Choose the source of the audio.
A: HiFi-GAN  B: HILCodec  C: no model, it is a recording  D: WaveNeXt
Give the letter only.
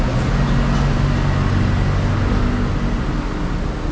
C